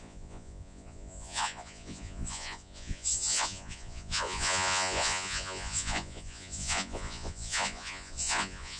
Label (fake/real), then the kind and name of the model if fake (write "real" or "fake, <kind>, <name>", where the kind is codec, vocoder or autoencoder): fake, vocoder, Vocos